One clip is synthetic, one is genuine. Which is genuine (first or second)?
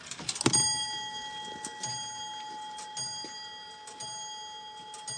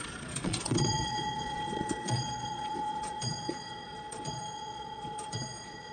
first